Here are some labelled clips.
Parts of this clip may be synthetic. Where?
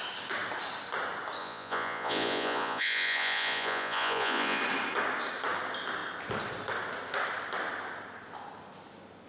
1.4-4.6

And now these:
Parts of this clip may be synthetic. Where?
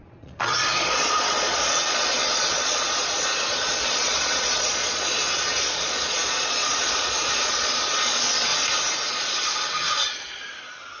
0.0-8.5; 9.1-11.0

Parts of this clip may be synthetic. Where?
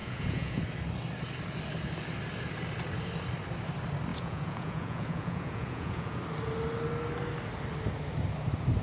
0.0-0.6; 4.1-6.2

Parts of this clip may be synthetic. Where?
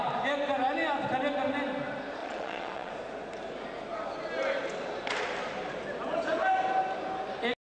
2.2-2.9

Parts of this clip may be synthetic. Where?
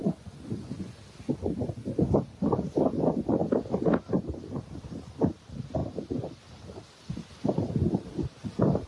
0.0-1.0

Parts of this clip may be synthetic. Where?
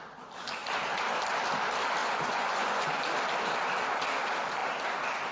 2.0-3.0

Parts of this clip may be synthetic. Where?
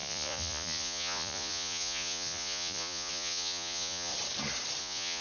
0.0-4.1; 4.8-5.2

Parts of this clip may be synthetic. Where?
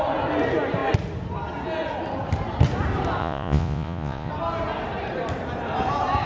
3.2-4.3